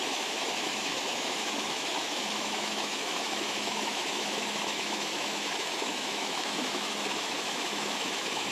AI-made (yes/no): yes